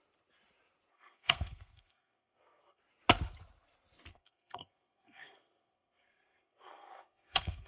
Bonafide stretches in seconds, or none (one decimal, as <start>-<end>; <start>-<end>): 0.0-0.9; 2.8-4.1

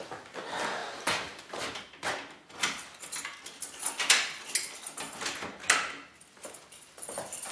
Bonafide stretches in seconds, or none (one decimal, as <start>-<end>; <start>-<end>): 0.0-7.5

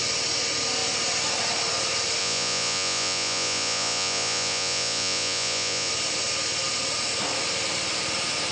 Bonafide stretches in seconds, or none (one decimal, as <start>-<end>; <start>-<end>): 0.0-2.2; 5.9-8.5

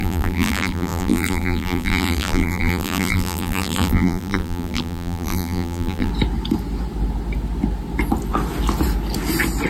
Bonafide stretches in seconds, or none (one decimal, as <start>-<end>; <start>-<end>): 6.1-9.7

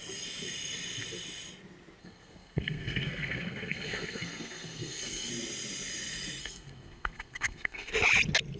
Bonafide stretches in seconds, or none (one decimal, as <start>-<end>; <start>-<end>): 0.0-2.0; 5.3-6.4; 7.9-8.6

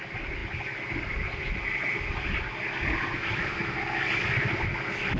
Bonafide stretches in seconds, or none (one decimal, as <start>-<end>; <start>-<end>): 0.0-5.2

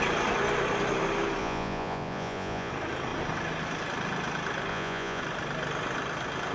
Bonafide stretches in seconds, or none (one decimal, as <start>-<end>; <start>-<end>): 0.0-1.4; 2.7-4.7; 5.2-6.5

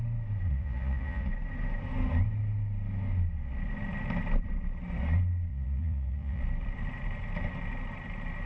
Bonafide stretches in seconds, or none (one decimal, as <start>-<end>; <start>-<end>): 0.0-0.5; 1.3-5.5; 6.4-8.5